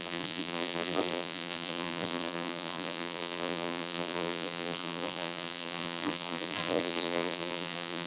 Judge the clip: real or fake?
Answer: fake